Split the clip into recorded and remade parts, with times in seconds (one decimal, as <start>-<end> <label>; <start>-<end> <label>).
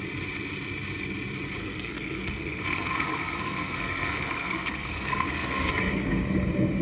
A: 0.0-1.6 recorded; 1.6-5.7 remade; 5.7-6.8 recorded